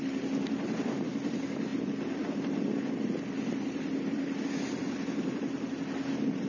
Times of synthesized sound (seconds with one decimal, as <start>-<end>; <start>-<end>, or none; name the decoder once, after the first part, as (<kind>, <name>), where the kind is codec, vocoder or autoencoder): none